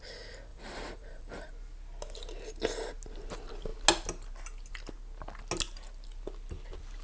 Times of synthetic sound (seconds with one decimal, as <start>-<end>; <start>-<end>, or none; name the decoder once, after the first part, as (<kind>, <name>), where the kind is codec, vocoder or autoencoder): 0.5-1.5 (vocoder, BigVGAN v2)